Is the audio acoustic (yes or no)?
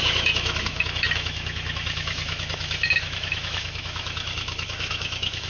no